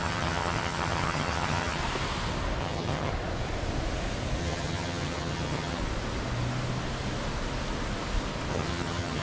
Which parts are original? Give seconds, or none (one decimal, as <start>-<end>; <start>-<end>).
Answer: 1.8-2.6; 3.1-4.4; 5.8-8.5